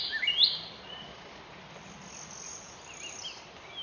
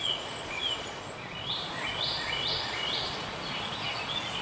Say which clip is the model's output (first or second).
second